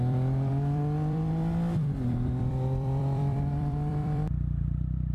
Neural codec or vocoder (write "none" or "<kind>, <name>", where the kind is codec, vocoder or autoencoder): vocoder, BigVGAN v2